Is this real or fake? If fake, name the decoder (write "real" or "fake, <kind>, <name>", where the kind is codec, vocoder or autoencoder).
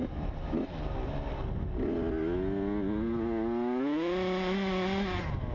real